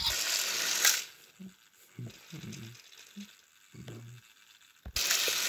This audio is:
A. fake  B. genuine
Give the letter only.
B